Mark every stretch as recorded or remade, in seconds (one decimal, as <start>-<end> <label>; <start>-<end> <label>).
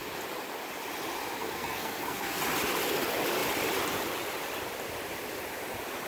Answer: 0.0-1.4 recorded; 1.4-2.4 remade; 2.4-6.1 recorded